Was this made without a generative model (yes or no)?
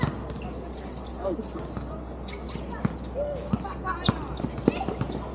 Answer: yes